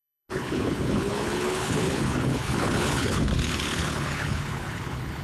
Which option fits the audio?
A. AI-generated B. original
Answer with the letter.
A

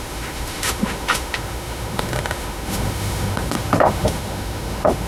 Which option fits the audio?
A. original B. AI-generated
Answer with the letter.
B